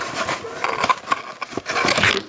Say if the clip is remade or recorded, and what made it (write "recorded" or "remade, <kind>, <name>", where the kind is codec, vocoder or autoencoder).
recorded